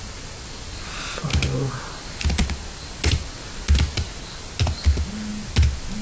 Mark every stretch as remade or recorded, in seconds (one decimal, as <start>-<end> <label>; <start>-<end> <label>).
0.0-6.0 recorded